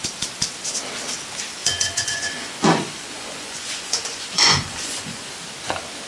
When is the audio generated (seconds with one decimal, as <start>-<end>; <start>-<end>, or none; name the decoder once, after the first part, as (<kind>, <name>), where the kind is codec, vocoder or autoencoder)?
1.6-5.3 (vocoder, Vocos)

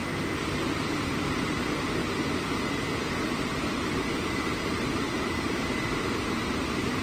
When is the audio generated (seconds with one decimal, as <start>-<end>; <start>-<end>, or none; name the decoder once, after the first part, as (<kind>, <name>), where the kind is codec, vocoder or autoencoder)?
0.6-2.0 (vocoder, BigVGAN v2); 3.1-7.0

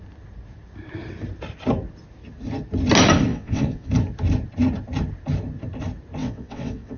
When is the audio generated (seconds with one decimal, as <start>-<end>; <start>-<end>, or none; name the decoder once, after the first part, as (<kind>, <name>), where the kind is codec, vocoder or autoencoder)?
3.3-3.9 (vocoder, WaveNeXt); 6.2-7.0

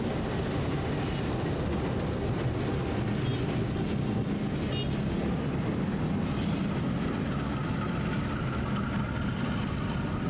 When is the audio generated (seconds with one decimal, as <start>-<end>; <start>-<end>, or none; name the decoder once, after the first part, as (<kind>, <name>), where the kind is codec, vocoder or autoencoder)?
none

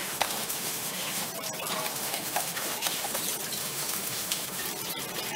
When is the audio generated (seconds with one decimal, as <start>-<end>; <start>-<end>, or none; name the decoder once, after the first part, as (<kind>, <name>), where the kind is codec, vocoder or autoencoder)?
0.0-1.3 (autoencoder, DAC-VAE); 1.9-3.2; 3.6-4.6

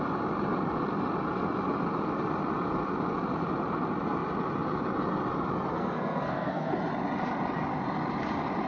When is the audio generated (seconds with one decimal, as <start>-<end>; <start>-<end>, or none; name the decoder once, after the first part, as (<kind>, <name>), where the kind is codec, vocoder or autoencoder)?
5.7-6.7 (codec, SNAC)

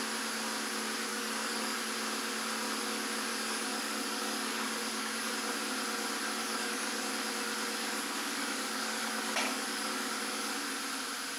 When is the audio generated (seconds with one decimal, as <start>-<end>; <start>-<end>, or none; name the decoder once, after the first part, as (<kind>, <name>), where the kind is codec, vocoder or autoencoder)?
1.1-1.8 (codec, DAC); 3.3-5.3; 6.4-7.1; 7.8-10.7